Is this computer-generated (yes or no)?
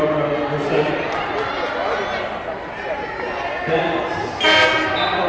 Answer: no